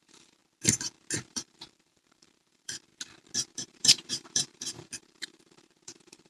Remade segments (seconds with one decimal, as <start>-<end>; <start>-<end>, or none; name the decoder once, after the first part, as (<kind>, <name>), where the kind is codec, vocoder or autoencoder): 0.0-0.4 (vocoder, BigVGAN v2); 1.3-2.9; 3.5-6.3